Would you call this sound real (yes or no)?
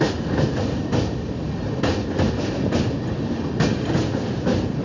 yes